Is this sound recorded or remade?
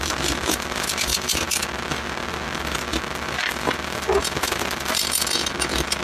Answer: remade